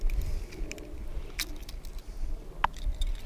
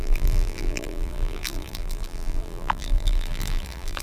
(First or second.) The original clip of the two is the first